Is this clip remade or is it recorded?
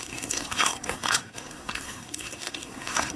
remade